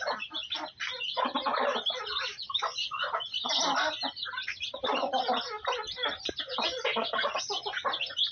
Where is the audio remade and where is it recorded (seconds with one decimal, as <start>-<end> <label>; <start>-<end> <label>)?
0.0-8.3 recorded